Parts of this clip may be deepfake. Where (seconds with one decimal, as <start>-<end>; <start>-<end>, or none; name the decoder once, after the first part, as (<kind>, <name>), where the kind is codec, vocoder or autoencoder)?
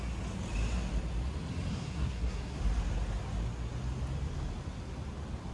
1.7-2.6 (codec, SNAC)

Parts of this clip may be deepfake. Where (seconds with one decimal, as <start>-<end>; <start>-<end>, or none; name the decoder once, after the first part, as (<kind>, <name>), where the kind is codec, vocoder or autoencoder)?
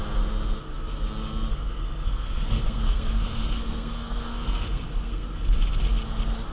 1.5-5.4 (codec, SNAC)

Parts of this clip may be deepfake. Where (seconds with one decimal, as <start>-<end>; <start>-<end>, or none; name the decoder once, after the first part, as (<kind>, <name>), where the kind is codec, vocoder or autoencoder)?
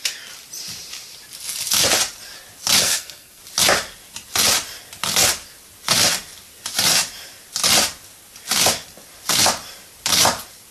2.8-3.4 (codec, SNAC)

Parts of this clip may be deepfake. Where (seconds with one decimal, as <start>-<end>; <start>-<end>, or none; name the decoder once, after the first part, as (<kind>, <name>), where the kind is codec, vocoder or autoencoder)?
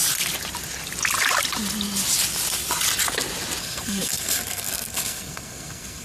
3.6-6.0 (codec, SNAC)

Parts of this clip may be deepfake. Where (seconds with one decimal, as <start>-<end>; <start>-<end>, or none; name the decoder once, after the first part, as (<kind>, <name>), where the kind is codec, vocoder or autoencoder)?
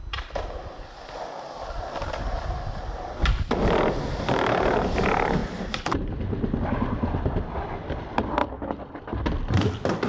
none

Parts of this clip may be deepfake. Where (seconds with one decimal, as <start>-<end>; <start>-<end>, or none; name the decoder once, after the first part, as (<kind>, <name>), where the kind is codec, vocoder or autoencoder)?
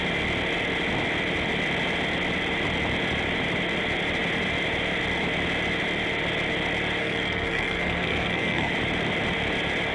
7.0-8.7 (codec, SNAC)